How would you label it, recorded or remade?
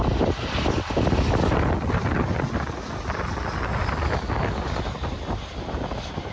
recorded